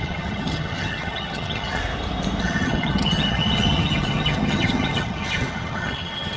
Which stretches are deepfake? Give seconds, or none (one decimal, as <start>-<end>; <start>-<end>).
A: 0.0-1.8; 2.4-6.4